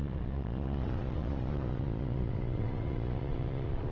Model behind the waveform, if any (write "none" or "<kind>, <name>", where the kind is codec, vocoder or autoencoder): vocoder, Vocos